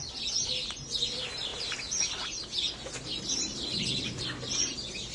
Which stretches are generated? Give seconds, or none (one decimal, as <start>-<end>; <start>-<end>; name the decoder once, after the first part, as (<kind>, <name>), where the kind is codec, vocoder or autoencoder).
none